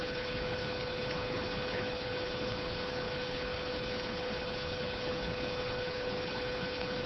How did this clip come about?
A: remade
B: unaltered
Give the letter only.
A